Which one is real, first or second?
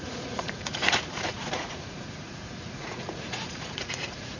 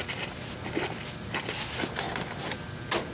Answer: second